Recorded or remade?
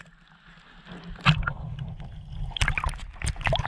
recorded